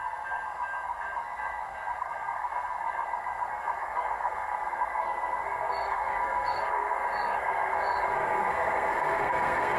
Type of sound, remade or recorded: remade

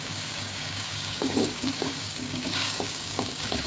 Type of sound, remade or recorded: remade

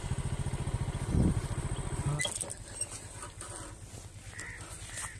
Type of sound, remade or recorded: recorded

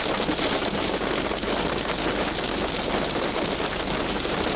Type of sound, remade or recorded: recorded